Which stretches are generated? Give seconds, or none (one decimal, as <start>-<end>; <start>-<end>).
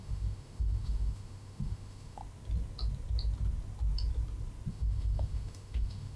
0.0-2.2; 4.7-6.2